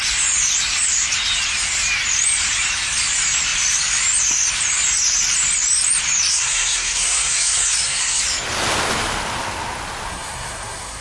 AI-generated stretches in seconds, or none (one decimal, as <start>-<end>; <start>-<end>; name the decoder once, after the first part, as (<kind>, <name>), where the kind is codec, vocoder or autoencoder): 6.3-8.2 (codec, SNAC); 10.1-11.0